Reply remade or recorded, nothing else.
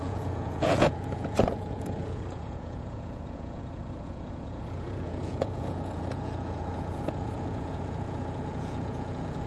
remade